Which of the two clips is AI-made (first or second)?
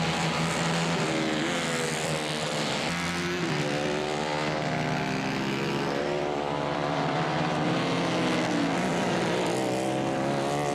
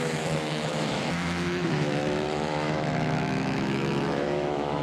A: second